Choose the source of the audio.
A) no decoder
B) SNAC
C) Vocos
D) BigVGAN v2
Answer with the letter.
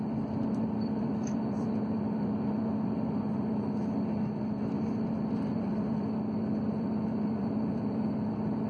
D